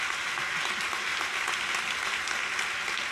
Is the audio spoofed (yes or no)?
no